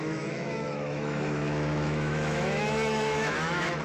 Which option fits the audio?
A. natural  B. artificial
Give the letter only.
B